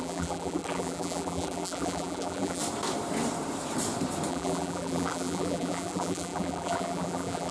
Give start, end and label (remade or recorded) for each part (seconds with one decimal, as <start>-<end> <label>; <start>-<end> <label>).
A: 0.0-2.6 remade; 2.6-4.3 recorded; 4.3-7.5 remade